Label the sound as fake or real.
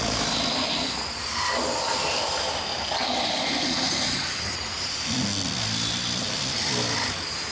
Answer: real